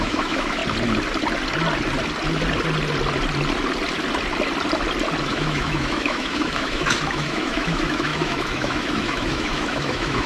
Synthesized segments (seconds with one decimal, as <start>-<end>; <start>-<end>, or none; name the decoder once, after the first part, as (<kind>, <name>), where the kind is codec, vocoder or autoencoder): 0.0-0.6 (autoencoder, DAC-VAE); 5.2-10.3